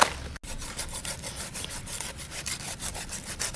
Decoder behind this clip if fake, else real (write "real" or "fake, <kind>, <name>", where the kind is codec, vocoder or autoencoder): real